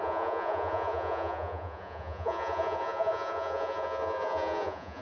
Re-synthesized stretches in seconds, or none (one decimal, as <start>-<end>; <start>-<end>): 0.0-5.0